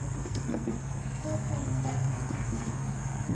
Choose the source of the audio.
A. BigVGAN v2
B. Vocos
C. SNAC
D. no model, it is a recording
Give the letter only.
C